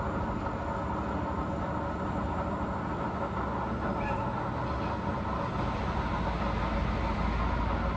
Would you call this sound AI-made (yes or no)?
no